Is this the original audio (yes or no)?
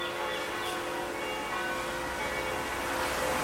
yes